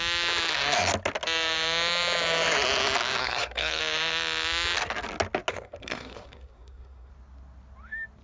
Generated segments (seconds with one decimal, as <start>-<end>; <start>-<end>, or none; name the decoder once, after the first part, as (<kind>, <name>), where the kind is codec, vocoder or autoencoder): 3.2-3.8 (codec, SNAC); 5.5-7.1